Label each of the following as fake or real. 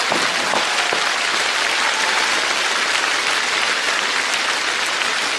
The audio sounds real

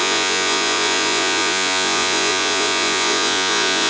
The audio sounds fake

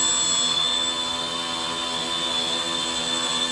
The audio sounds real